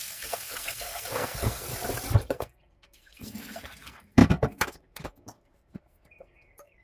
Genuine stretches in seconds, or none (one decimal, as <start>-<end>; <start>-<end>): 1.7-2.3